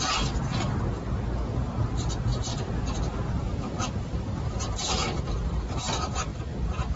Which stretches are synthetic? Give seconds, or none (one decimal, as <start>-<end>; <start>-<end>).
2.5-4.9